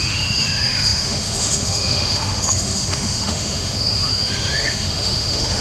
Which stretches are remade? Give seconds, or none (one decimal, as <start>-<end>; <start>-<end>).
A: 0.0-5.6